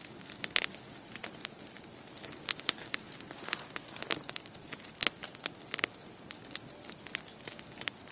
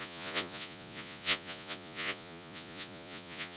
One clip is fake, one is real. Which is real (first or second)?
first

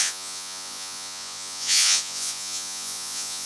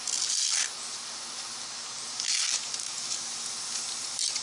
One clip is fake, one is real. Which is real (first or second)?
second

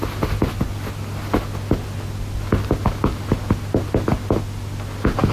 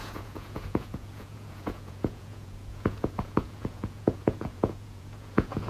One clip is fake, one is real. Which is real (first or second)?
first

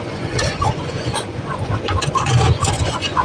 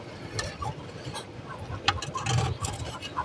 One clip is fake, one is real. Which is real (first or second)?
second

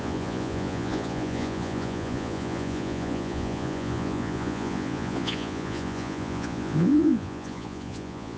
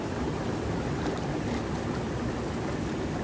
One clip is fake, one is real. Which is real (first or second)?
second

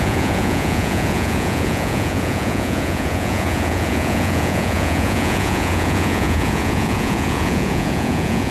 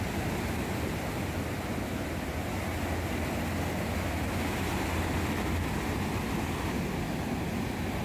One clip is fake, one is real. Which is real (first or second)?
second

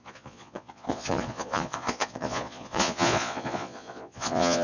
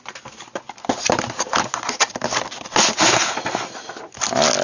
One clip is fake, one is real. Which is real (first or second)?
second